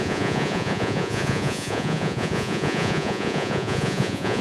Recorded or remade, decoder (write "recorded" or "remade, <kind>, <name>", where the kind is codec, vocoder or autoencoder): remade, vocoder, Vocos